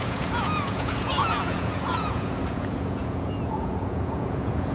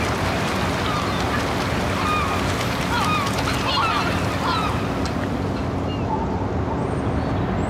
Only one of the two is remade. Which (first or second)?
first